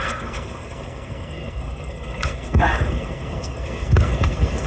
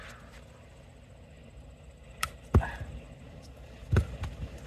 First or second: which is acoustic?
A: second